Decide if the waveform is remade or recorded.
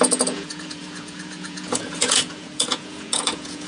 remade